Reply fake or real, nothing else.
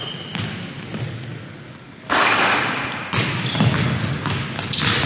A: real